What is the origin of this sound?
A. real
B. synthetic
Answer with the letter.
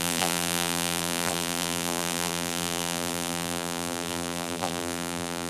B